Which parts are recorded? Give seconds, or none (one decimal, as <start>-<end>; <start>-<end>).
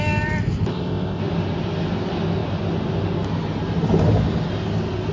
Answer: 0.0-0.7; 1.2-5.1